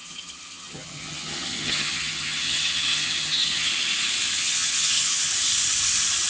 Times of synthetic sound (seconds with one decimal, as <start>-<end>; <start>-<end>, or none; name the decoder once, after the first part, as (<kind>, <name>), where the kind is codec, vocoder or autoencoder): 0.0-3.7 (vocoder, HiFi-GAN); 4.4-5.3